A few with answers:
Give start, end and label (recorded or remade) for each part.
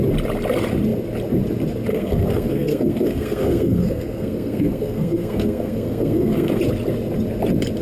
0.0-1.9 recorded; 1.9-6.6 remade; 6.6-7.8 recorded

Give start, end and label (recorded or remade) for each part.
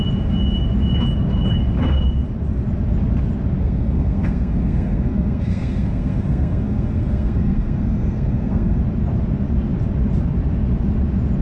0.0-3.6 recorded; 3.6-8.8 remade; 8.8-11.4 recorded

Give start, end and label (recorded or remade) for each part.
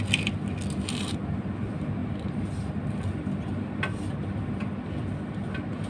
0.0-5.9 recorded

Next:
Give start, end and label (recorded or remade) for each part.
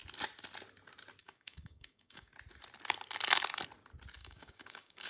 0.0-1.2 recorded; 1.2-2.3 remade; 2.3-4.2 recorded; 4.2-5.1 remade